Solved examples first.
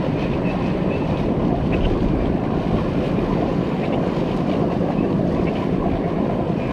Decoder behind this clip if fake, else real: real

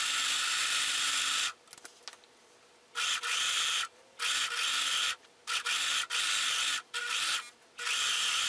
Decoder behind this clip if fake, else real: real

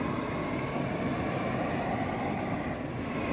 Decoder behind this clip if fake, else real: real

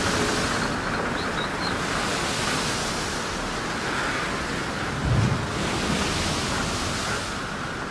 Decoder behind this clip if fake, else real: real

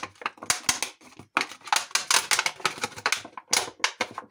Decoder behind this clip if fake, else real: real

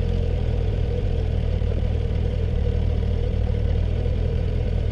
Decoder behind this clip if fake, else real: fake, vocoder, BigVGAN v2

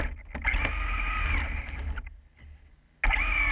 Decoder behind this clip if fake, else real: real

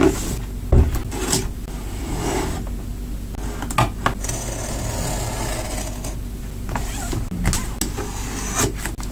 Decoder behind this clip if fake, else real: real